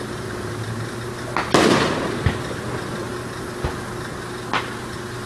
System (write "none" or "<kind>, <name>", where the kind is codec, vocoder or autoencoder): none